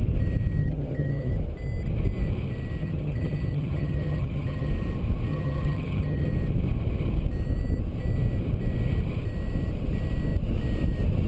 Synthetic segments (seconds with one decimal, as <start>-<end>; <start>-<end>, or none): 0.6-1.3; 2.8-4.7; 5.3-6.3